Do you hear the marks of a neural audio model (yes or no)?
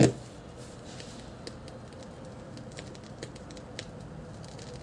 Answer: no